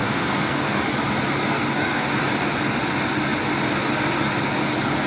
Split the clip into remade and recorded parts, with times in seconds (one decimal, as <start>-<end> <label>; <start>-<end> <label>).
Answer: 0.0-0.8 remade; 0.8-1.4 recorded; 1.4-2.1 remade; 2.1-5.1 recorded